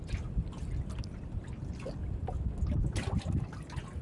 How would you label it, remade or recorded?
recorded